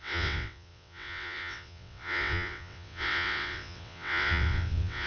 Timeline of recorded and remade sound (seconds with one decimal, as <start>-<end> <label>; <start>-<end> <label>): 0.0-5.1 remade